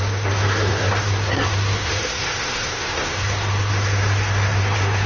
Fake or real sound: fake